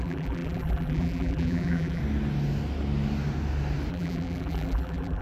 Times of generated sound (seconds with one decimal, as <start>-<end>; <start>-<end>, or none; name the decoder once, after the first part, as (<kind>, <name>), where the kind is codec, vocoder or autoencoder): 0.0-2.0 (vocoder, BigVGAN v2); 3.9-5.2